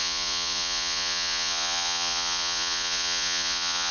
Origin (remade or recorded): remade